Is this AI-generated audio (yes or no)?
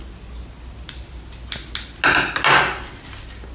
no